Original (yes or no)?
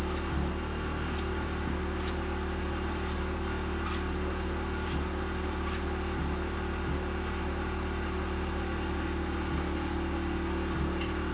yes